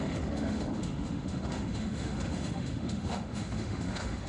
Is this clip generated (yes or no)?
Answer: yes